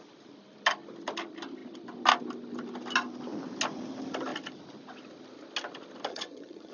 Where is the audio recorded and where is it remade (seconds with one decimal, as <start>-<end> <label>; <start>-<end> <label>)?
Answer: 0.0-6.1 recorded; 6.1-6.7 remade